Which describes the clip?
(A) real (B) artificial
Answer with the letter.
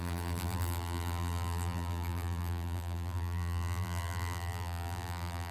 B